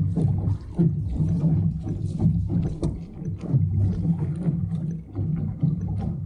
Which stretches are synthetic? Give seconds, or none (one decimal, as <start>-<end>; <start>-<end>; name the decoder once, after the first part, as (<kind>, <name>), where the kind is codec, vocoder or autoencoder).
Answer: none